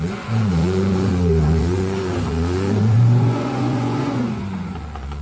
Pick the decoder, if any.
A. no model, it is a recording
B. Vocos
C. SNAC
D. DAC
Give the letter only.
B